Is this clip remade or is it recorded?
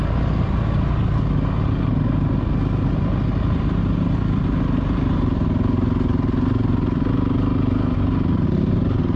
recorded